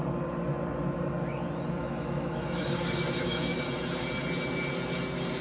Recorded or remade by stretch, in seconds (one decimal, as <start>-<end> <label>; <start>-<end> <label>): 0.0-1.8 recorded; 1.8-3.6 remade; 3.6-5.4 recorded